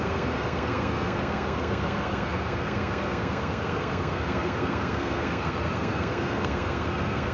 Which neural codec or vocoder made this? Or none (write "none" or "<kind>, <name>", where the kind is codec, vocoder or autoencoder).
codec, SNAC